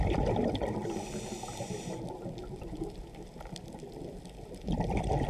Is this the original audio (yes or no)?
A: yes